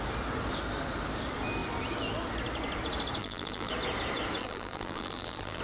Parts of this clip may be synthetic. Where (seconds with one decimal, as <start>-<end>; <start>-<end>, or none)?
3.2-3.7; 4.4-5.6